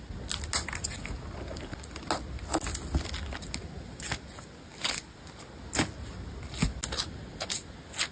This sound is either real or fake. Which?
real